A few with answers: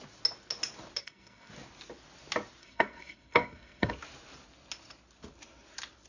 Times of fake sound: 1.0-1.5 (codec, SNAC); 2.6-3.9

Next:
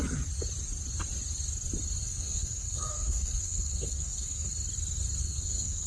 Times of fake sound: 2.0-4.5 (codec, SNAC); 5.2-5.9